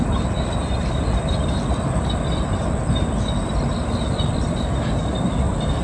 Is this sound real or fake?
real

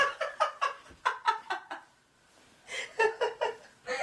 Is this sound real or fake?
real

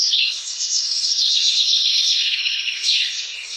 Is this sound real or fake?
fake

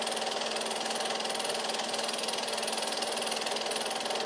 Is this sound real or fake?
real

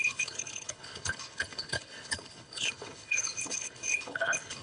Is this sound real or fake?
fake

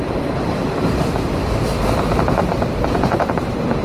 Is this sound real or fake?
fake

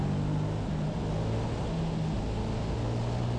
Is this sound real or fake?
real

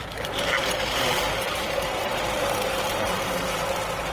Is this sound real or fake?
fake